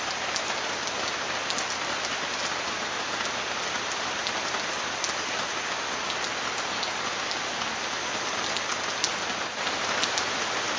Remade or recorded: recorded